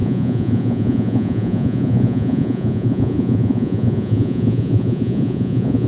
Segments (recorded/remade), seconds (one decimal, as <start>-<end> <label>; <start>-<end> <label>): 0.0-5.9 remade